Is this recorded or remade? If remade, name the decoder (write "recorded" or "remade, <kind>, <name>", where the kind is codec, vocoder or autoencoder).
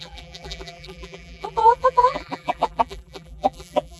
remade, vocoder, BigVGAN v2